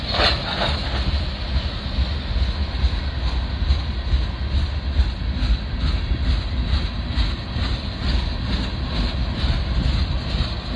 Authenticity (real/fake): real